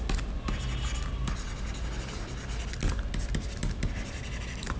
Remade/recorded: recorded